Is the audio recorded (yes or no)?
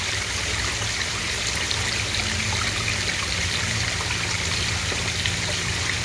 yes